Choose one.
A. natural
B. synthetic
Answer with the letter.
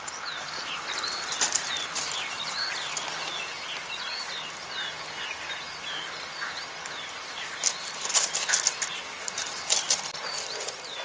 A